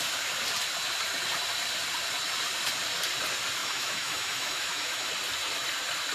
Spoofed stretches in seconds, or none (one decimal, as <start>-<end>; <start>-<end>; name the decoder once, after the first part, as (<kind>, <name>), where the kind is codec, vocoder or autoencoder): 3.6-5.1 (autoencoder, DAC-VAE)